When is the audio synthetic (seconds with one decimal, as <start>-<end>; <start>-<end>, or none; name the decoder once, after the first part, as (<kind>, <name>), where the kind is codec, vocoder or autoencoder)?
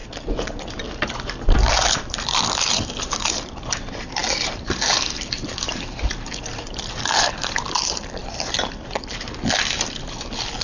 0.7-10.6 (vocoder, BigVGAN v2)